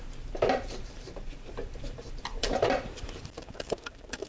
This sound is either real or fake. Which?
fake